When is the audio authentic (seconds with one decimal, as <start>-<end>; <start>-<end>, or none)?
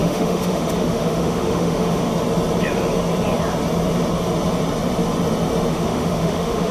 2.1-5.7